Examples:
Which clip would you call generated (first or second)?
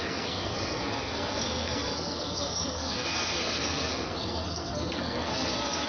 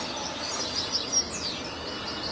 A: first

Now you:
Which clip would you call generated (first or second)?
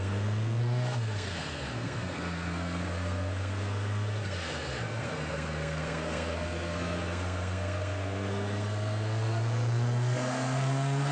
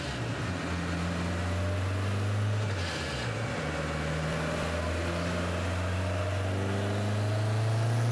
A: first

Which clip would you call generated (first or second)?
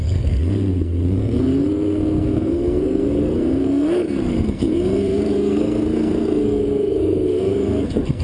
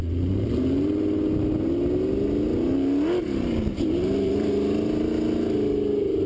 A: first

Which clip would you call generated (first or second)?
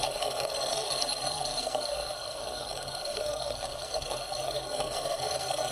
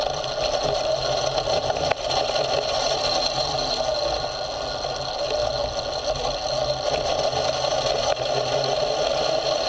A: first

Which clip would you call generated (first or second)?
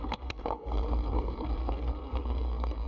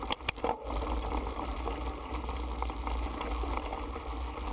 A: first